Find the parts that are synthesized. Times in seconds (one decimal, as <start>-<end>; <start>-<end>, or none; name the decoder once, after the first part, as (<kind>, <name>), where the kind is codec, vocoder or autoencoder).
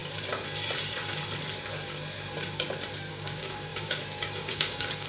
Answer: 3.1-5.1 (codec, DAC)